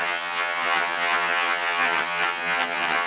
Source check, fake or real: fake